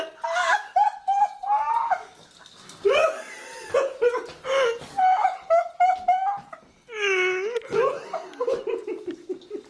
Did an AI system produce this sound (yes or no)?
no